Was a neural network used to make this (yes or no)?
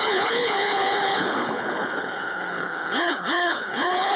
yes